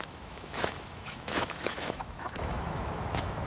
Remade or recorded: remade